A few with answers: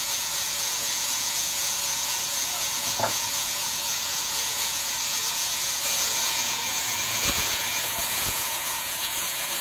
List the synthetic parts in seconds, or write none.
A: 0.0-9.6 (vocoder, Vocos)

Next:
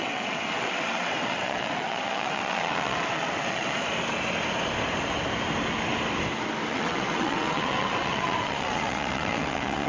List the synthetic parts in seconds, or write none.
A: 0.0-3.8 (vocoder, WaveNeXt); 6.7-9.9

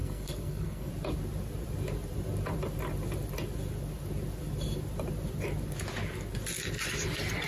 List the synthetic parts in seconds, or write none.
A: 0.0-0.9 (codec, SNAC)